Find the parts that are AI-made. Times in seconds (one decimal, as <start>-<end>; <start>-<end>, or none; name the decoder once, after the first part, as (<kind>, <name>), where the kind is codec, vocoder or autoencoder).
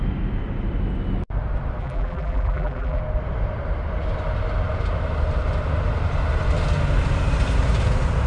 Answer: 1.8-3.0 (vocoder, BigVGAN v2)